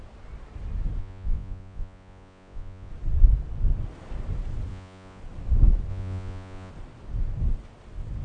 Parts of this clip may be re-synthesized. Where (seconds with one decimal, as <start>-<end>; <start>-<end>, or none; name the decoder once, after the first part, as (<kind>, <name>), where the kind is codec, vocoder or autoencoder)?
1.0-2.9 (vocoder, Vocos); 4.7-5.2; 5.9-6.7